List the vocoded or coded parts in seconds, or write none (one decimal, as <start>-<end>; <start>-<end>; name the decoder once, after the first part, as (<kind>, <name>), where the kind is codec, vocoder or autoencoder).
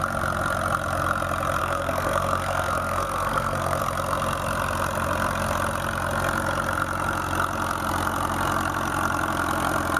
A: 1.6-3.8 (codec, SNAC)